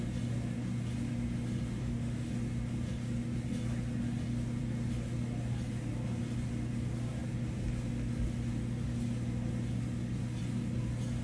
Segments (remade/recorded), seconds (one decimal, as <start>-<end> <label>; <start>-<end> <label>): 0.0-1.8 recorded; 1.8-2.3 remade; 2.3-11.2 recorded